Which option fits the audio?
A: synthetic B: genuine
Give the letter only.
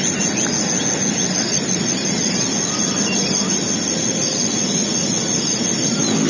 B